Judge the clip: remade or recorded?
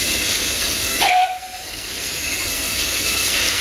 remade